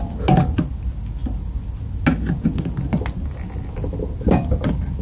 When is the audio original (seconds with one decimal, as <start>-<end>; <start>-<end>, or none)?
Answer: 0.0-5.0